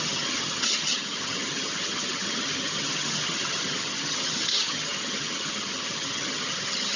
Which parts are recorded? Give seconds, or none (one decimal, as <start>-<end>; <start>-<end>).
none